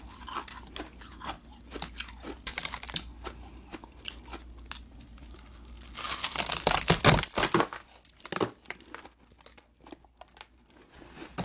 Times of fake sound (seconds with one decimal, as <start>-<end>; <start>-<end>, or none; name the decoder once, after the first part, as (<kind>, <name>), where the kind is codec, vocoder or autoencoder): none